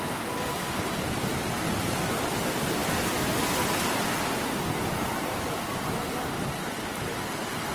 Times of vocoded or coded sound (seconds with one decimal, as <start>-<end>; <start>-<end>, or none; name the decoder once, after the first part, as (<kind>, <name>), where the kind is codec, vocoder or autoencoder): none